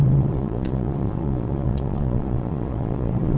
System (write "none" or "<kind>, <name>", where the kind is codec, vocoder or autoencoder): vocoder, Vocos